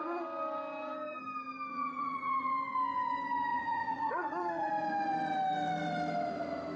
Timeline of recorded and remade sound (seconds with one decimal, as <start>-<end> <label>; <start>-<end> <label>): 0.0-1.7 recorded; 1.7-2.5 remade; 2.5-3.5 recorded; 3.5-4.7 remade; 4.7-6.8 recorded